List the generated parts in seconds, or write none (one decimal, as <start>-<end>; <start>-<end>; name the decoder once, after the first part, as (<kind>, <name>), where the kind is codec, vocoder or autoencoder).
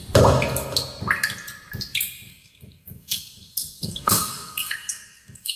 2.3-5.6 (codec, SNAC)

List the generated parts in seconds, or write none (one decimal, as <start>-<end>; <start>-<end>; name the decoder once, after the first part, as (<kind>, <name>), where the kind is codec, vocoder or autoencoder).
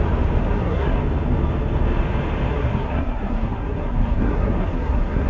0.4-1.0 (codec, SNAC); 2.5-5.3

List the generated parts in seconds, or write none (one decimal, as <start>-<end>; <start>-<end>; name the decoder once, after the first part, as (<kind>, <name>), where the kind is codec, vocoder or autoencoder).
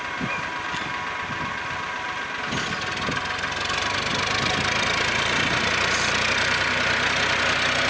none